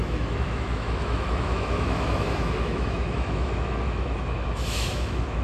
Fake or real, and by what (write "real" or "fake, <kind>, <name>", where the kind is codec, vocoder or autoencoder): fake, autoencoder, DAC-VAE